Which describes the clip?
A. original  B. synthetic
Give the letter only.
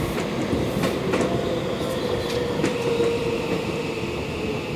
A